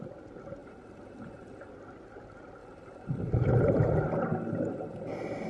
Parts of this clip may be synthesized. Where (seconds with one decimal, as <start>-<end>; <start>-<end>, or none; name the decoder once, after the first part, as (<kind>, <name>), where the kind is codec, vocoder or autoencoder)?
0.6-1.7 (vocoder, BigVGAN v2); 2.6-3.3; 4.3-5.1